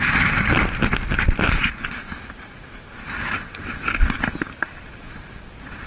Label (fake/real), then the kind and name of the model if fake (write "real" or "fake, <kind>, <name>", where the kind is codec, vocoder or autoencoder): real